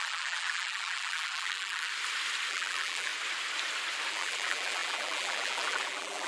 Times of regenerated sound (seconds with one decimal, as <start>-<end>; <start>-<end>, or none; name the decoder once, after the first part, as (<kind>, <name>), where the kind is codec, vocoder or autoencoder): 0.0-1.9 (vocoder, BigVGAN v2); 2.5-3.1; 4.1-6.3